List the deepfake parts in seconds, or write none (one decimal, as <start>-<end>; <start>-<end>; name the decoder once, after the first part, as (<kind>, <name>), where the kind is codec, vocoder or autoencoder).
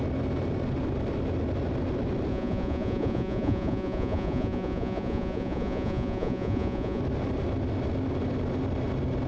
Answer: 2.3-7.0 (vocoder, Vocos)